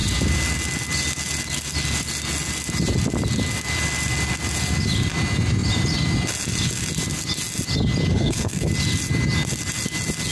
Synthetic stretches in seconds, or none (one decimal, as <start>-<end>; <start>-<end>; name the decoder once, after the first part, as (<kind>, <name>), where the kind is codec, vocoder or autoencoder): 8.1-8.7 (codec, SNAC)